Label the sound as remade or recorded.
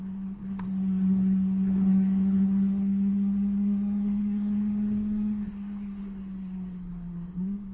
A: remade